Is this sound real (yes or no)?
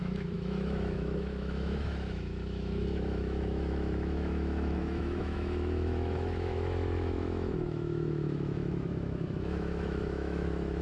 no